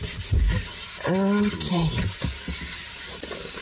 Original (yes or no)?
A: yes